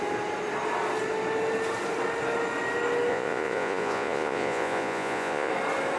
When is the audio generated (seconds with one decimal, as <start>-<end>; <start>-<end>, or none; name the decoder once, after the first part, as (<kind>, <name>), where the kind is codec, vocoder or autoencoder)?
3.1-5.5 (vocoder, Vocos)